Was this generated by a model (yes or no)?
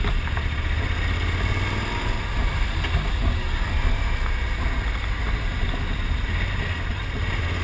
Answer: no